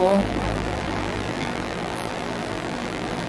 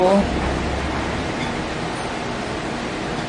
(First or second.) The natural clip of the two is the second